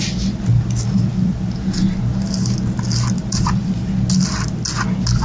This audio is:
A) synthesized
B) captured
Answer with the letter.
B